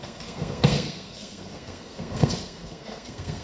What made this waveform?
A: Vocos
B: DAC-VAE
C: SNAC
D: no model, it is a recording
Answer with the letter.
C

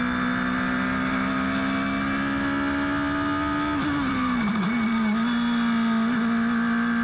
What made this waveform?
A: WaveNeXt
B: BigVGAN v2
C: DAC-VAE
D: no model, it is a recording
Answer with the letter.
D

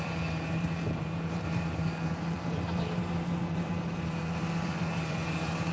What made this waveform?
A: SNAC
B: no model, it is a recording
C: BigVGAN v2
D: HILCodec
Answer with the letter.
C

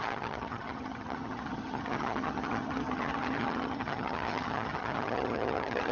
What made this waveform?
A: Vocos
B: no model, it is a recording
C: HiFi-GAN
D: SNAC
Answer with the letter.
C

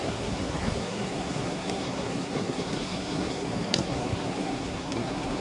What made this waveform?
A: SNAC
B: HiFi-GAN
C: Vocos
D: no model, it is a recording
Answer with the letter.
A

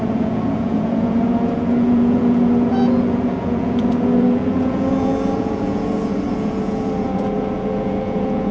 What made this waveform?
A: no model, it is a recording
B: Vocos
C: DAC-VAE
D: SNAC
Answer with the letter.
B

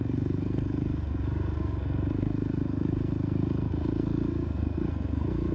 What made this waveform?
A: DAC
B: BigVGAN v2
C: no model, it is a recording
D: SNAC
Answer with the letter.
D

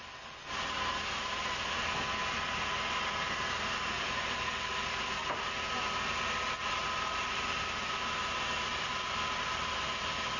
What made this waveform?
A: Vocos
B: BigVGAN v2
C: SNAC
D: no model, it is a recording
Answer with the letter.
D